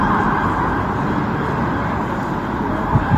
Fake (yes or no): no